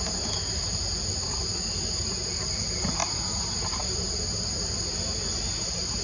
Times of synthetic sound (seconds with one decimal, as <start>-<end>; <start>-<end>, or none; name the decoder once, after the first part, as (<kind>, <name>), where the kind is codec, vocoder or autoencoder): none